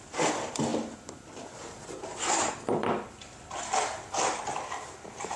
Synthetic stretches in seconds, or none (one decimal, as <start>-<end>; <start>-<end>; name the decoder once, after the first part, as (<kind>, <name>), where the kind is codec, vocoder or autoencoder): 0.0-5.4 (vocoder, BigVGAN v2)